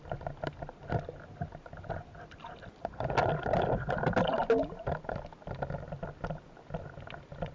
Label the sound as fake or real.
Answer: real